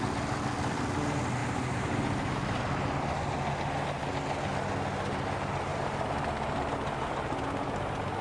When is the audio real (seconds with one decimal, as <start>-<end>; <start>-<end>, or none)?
0.0-1.4; 2.6-5.7; 7.4-8.2